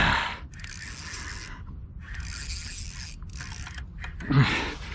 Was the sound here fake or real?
real